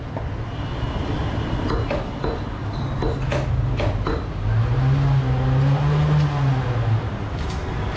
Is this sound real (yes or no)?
yes